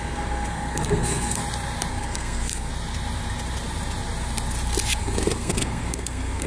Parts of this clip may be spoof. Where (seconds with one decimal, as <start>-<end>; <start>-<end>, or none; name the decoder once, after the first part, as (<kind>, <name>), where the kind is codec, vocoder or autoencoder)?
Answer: 0.0-1.4 (codec, SNAC); 1.9-2.7; 5.0-6.5